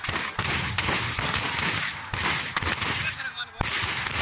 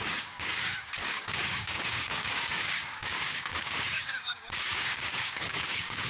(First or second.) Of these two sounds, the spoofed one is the second